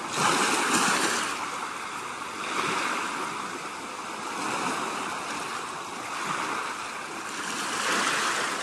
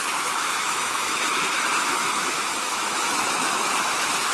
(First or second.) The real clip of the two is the first